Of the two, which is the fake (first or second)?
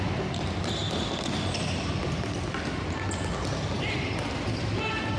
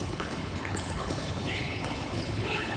second